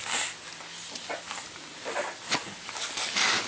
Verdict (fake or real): real